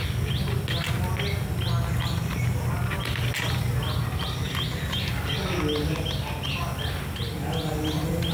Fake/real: real